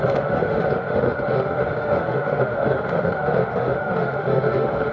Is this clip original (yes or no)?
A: no